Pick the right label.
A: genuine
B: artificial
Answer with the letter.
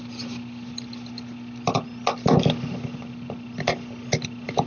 A